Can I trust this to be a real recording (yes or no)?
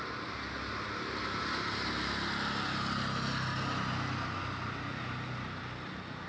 yes